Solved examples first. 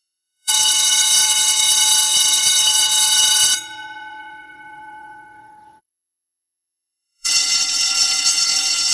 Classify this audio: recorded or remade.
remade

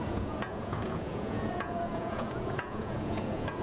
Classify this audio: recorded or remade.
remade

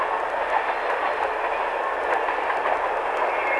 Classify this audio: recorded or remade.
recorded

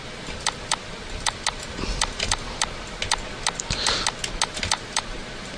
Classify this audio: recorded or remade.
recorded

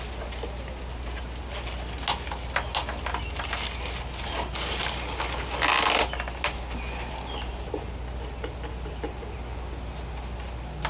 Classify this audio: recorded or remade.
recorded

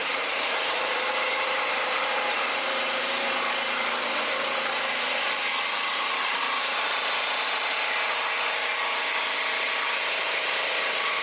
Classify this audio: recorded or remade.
remade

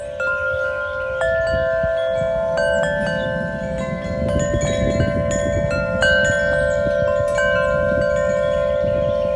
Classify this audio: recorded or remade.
recorded